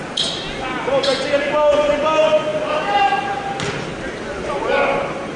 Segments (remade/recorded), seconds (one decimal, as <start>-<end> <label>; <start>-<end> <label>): 0.0-5.4 recorded